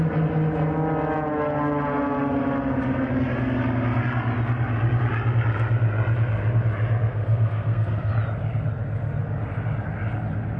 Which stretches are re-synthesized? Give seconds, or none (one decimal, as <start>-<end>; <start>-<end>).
7.1-8.1